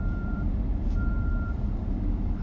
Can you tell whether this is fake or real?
fake